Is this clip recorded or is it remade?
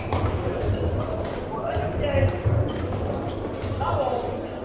recorded